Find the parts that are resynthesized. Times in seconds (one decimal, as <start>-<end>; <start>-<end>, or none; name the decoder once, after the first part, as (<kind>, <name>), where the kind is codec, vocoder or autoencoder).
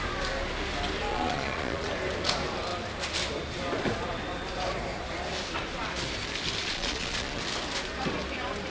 1.1-1.9 (vocoder, Vocos); 6.6-7.4